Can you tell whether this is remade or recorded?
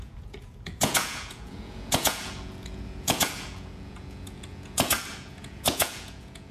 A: remade